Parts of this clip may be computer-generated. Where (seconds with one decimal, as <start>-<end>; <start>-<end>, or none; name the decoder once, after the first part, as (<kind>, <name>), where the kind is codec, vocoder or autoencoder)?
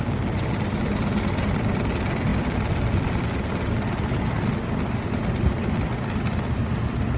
none